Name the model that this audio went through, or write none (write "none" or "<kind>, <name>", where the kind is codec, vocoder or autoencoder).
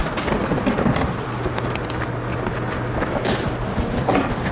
none